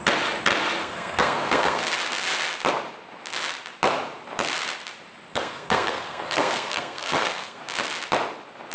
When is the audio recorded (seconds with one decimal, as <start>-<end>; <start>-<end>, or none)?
0.0-0.8; 1.8-5.3; 7.6-8.7